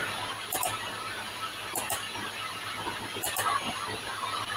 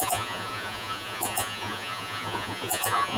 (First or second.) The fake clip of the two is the second